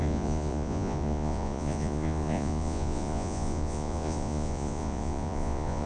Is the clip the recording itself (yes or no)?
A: no